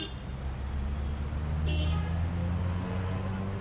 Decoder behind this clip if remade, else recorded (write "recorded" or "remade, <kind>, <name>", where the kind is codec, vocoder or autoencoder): recorded